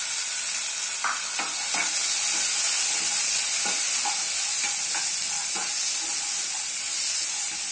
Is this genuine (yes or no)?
yes